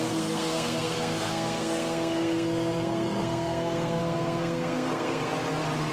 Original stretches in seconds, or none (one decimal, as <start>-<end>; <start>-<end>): 5.3-5.9